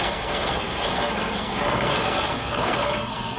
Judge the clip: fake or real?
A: fake